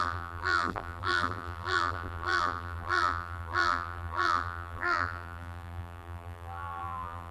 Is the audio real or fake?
fake